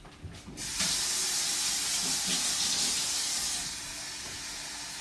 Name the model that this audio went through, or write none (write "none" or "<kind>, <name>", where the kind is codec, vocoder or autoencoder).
none